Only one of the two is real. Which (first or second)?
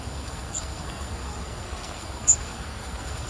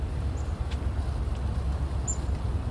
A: second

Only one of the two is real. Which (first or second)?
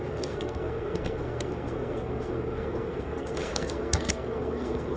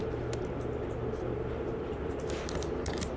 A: second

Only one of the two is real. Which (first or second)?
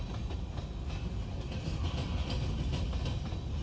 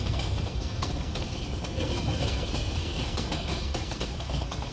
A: first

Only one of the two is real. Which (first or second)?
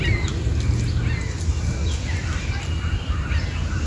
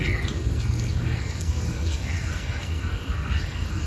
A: first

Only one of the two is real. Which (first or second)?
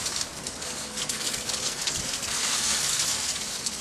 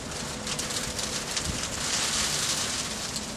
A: second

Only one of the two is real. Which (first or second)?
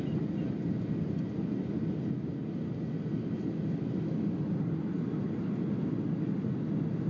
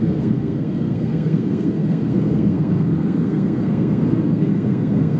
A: first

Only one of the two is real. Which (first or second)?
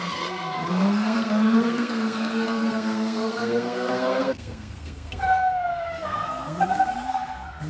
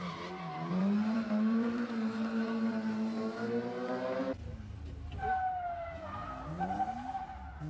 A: second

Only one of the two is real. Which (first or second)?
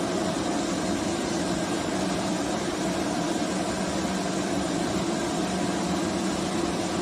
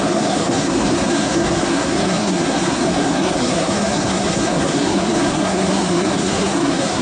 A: first